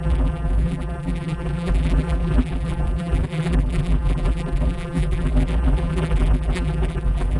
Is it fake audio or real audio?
fake